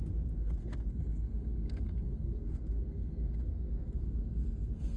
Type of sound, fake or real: fake